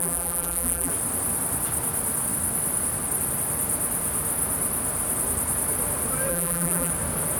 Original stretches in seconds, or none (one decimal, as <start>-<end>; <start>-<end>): 0.9-6.3; 6.9-7.4